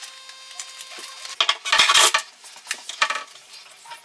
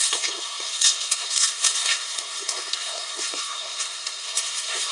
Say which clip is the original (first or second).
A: first